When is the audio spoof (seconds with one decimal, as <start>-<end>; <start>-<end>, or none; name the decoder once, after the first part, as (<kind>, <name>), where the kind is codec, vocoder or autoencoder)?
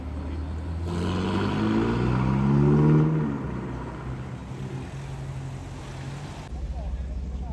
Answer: none